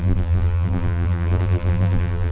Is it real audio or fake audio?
fake